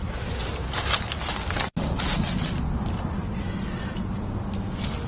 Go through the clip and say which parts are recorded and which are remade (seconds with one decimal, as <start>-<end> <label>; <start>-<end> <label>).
0.0-5.1 recorded